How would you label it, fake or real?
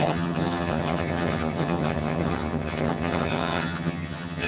fake